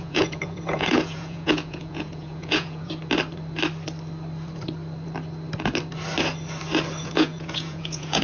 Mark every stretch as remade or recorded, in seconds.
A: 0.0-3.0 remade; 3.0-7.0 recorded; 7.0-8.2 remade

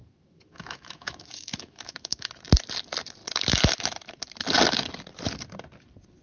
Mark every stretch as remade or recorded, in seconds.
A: 0.0-2.3 remade; 2.3-6.2 recorded

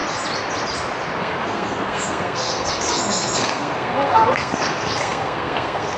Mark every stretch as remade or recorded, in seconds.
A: 0.0-1.2 recorded; 1.2-6.0 remade

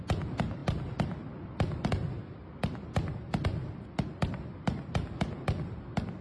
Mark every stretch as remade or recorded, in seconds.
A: 0.0-6.2 recorded

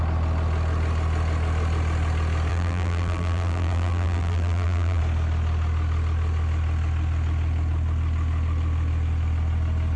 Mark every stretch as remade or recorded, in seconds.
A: 0.0-2.5 recorded; 2.5-5.0 remade; 5.0-10.0 recorded

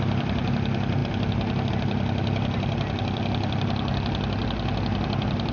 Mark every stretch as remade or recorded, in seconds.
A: 0.0-5.5 recorded

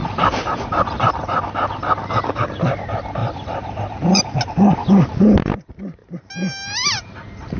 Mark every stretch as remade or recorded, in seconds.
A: 0.0-1.4 remade; 1.4-3.2 recorded; 3.2-4.2 remade; 4.2-6.0 recorded; 6.0-7.6 remade